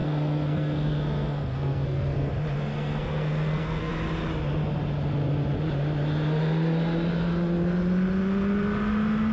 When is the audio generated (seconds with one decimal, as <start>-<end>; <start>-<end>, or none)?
0.0-2.3; 2.7-3.9